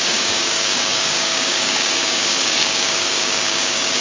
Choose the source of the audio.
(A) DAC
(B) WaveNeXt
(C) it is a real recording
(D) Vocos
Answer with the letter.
A